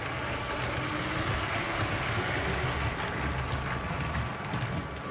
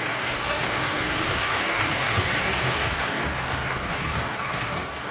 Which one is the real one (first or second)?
first